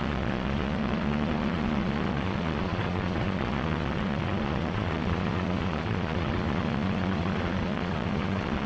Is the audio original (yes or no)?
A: no